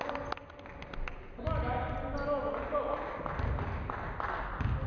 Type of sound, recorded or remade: recorded